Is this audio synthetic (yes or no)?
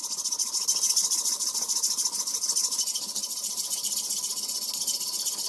no